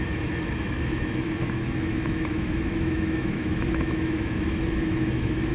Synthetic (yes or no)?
yes